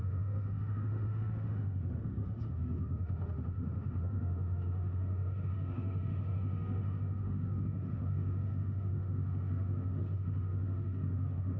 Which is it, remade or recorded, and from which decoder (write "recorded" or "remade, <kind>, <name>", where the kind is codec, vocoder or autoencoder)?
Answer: remade, autoencoder, DAC-VAE